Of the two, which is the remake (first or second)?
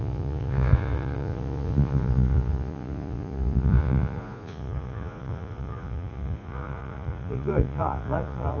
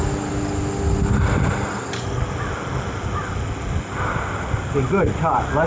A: first